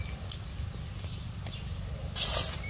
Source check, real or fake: real